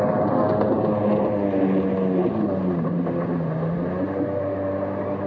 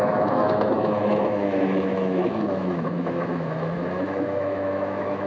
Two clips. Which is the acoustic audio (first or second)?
first